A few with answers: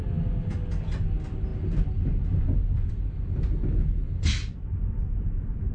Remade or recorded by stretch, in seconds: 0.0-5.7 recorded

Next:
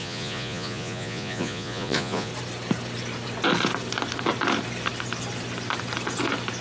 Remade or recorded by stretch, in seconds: 0.0-2.3 remade; 2.3-6.6 recorded